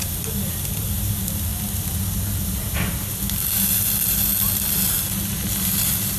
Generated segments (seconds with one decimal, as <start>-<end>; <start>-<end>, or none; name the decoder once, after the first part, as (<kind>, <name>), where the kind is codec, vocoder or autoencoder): none